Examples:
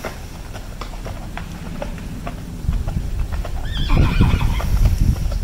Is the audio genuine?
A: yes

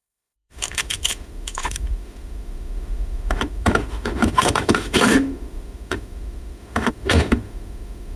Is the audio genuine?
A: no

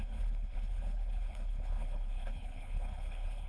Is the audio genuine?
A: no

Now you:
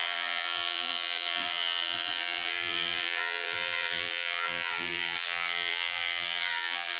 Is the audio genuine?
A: no